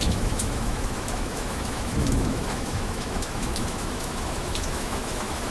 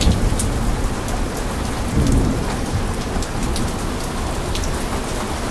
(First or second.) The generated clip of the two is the first